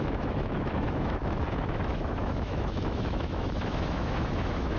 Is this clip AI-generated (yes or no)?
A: yes